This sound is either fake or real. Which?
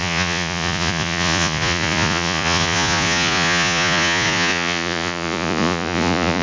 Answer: fake